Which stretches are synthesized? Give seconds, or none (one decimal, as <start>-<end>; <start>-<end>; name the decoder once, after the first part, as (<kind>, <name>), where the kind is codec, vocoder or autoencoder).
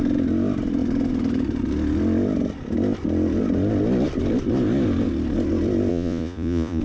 5.9-6.8 (vocoder, Vocos)